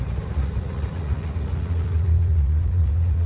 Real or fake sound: fake